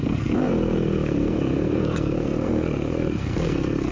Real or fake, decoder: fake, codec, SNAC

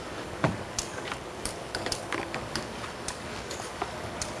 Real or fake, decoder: fake, codec, DAC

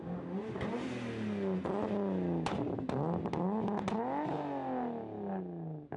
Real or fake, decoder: real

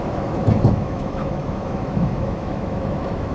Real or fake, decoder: fake, autoencoder, DAC-VAE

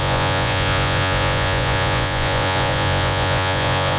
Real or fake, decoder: fake, vocoder, Vocos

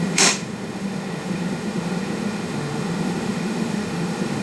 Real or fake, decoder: fake, autoencoder, DAC-VAE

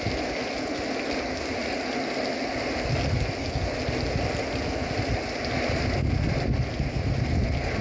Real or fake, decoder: real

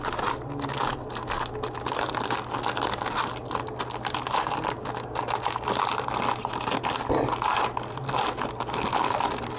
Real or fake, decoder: real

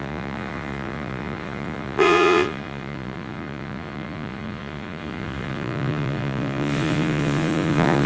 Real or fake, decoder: fake, vocoder, Vocos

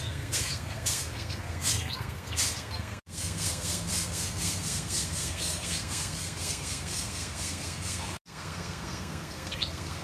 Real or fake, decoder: fake, codec, SNAC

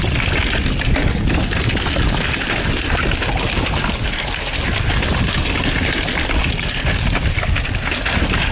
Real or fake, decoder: real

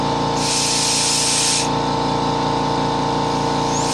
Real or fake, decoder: real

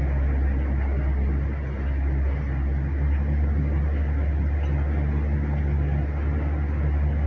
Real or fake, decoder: real